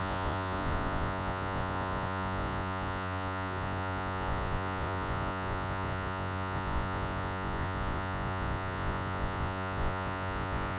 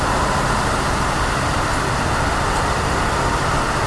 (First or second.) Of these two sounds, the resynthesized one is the first